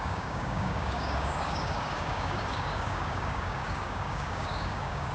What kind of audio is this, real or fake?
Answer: fake